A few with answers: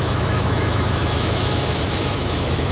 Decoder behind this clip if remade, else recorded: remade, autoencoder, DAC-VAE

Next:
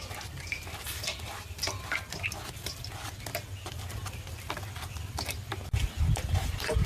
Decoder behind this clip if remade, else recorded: recorded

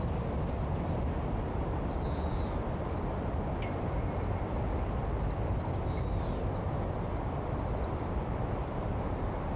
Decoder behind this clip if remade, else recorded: recorded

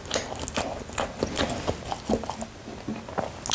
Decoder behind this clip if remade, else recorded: recorded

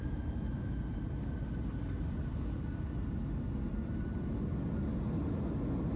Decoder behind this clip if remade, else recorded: recorded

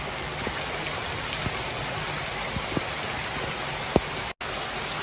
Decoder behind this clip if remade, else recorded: recorded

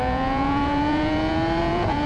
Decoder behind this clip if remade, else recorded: remade, vocoder, Vocos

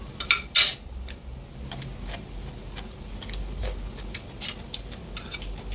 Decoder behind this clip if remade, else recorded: recorded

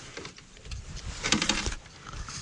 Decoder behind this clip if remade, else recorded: remade, vocoder, BigVGAN v2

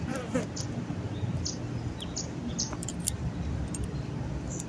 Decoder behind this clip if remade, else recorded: remade, vocoder, BigVGAN v2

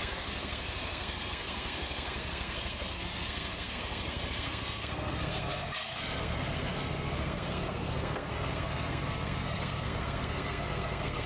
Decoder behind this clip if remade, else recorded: remade, codec, SNAC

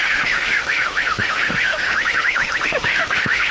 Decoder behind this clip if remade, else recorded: remade, autoencoder, DAC-VAE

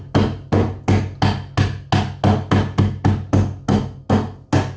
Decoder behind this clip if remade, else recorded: recorded